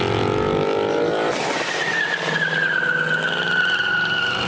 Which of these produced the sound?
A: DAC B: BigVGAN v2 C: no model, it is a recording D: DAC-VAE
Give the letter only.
C